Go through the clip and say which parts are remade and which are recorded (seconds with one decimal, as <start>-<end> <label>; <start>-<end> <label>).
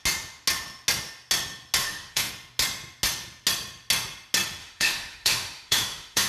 0.0-1.8 recorded; 1.8-2.3 remade; 2.3-4.6 recorded; 4.6-6.3 remade